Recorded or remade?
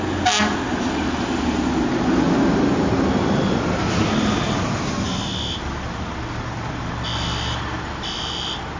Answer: recorded